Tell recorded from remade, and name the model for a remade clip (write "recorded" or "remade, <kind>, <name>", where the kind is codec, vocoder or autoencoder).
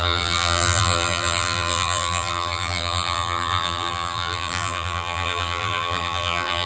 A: remade, vocoder, BigVGAN v2